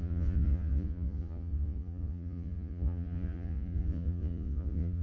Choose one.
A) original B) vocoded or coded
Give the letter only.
B